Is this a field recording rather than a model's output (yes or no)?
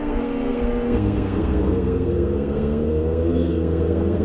no